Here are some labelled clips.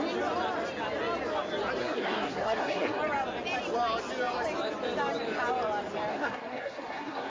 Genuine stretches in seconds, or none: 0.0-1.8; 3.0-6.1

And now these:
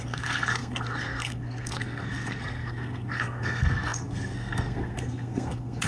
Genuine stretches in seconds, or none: none

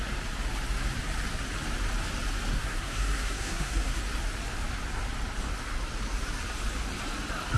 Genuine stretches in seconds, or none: 0.0-2.5; 4.0-7.6

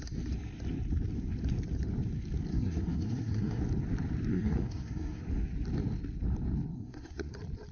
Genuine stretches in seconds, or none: 0.0-2.5; 3.6-4.3; 5.2-6.7; 7.3-7.7